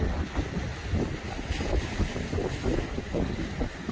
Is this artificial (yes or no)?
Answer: no